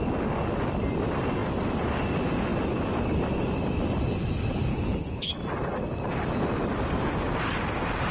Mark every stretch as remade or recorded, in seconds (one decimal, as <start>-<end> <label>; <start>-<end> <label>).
0.0-4.7 recorded; 4.7-5.3 remade; 5.3-8.1 recorded